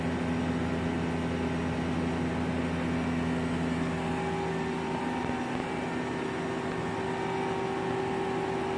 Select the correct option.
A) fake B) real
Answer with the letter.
B